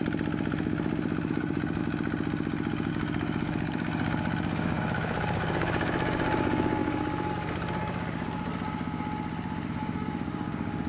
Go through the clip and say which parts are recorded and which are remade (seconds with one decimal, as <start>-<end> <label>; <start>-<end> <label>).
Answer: 0.0-1.3 recorded; 1.3-1.8 remade; 1.8-2.9 recorded; 2.9-8.5 remade; 8.5-9.7 recorded; 9.7-10.9 remade